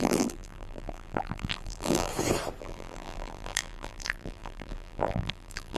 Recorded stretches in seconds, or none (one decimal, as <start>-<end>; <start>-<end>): 2.1-2.6